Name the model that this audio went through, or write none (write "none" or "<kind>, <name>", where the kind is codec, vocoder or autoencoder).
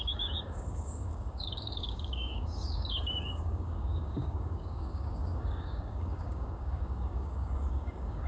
codec, DAC